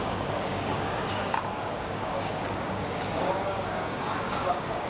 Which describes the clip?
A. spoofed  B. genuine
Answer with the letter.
A